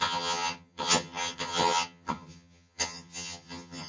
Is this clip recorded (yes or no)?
no